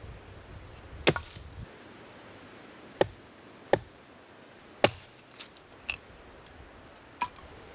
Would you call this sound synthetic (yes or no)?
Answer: no